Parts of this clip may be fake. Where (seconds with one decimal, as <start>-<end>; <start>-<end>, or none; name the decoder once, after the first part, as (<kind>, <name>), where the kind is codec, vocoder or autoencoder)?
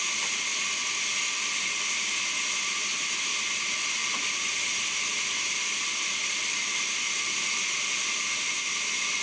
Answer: 4.0-8.7 (vocoder, BigVGAN v2)